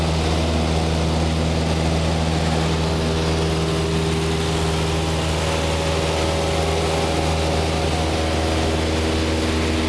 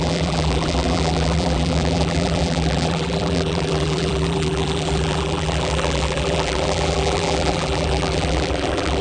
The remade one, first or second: second